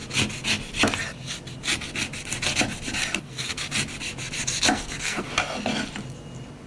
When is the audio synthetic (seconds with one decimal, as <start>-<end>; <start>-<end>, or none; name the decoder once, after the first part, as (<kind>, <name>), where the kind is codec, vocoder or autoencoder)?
3.2-3.6 (codec, SNAC); 4.7-5.3